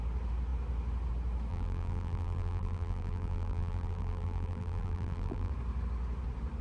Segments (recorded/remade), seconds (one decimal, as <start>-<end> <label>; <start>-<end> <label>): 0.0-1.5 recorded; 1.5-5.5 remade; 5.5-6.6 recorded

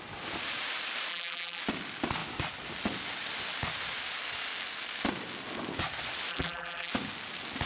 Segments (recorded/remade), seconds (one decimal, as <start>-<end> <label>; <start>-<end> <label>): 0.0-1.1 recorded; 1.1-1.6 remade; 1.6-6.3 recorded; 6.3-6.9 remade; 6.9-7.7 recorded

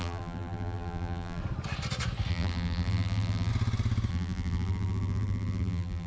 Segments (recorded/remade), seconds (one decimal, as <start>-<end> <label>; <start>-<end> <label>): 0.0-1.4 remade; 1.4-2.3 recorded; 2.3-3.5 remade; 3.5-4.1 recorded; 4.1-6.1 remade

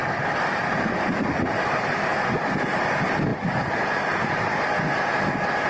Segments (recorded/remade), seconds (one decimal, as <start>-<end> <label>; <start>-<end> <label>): 0.0-5.7 recorded

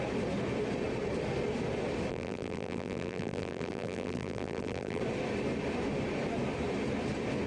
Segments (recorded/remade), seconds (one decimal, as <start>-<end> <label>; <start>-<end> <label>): 0.0-2.1 recorded; 2.1-5.0 remade; 5.0-7.5 recorded